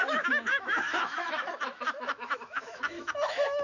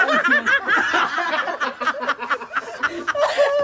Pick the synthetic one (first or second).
first